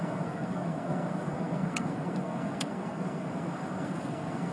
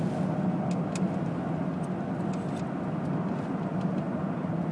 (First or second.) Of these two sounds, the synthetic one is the first